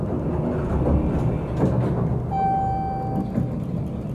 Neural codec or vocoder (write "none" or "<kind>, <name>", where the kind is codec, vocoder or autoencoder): none